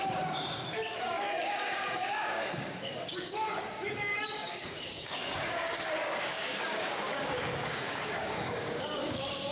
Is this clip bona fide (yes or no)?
no